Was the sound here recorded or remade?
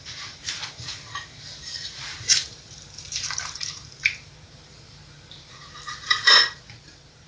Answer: remade